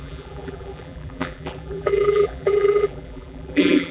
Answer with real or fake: fake